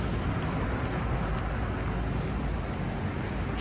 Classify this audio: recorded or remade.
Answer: recorded